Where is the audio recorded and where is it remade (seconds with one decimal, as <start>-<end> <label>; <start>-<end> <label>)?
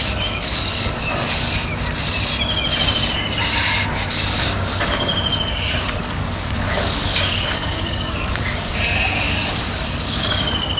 0.0-1.7 remade; 1.7-3.9 recorded; 3.9-5.1 remade; 5.1-6.0 recorded; 6.0-10.8 remade